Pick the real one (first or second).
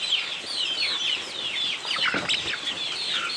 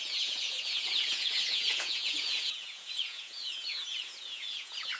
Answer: first